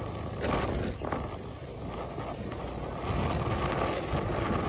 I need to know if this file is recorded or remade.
recorded